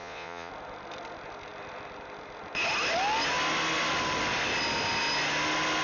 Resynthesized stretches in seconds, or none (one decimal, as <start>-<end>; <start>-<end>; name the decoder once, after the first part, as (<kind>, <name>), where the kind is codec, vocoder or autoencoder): 0.0-0.5 (vocoder, Vocos)